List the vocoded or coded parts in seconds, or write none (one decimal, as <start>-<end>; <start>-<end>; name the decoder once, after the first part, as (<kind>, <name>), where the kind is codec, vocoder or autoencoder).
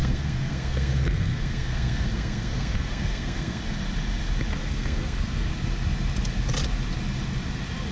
0.0-3.6 (codec, SNAC); 4.5-5.5